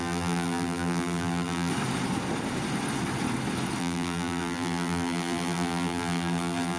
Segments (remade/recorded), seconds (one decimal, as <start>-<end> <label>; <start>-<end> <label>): 0.0-1.7 remade; 1.7-3.8 recorded; 3.8-6.8 remade